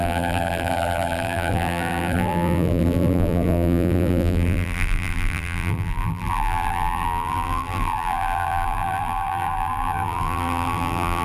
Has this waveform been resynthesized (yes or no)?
yes